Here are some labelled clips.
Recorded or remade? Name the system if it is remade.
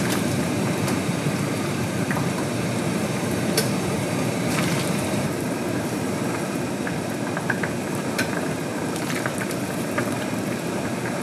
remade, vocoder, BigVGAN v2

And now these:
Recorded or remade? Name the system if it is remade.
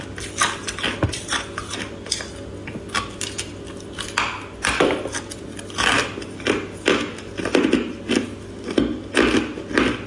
recorded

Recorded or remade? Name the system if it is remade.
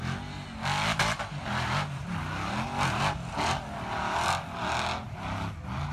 recorded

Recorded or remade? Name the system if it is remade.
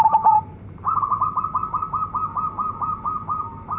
recorded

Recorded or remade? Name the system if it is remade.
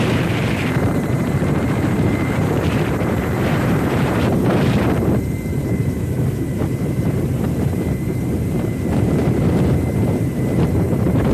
remade, vocoder, BigVGAN v2